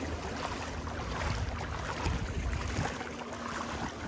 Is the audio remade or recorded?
recorded